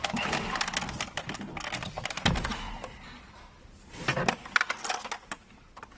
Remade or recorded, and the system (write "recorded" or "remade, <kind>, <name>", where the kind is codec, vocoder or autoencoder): recorded